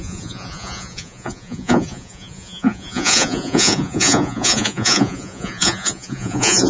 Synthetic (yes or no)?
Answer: yes